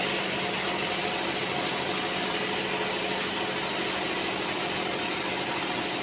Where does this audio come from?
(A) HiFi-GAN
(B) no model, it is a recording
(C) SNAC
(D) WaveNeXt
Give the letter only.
B